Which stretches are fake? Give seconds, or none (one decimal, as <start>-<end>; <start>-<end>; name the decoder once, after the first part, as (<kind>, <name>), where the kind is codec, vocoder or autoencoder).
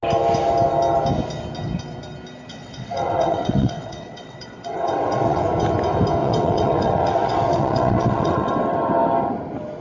2.5-5.4 (vocoder, WaveNeXt); 6.2-8.5